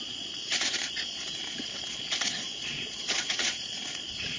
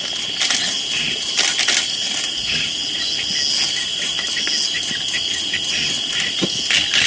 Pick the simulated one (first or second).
first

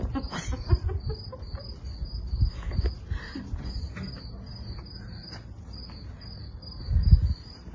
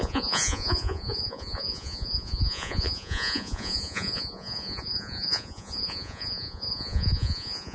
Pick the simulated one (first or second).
second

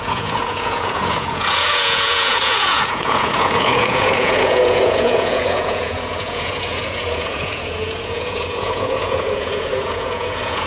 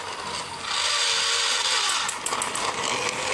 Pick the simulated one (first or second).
first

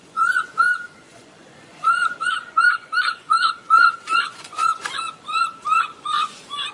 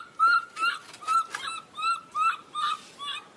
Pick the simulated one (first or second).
first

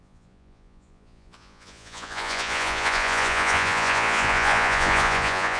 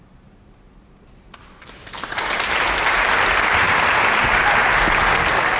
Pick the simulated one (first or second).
first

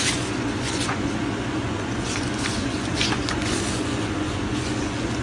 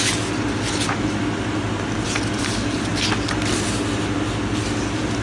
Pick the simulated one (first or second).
first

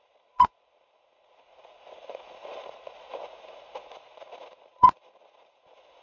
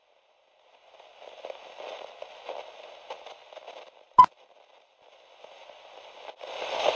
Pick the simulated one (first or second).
first